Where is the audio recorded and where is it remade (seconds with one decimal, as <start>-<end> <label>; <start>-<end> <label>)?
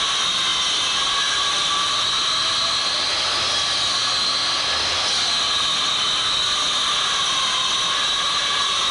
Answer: 0.0-8.9 recorded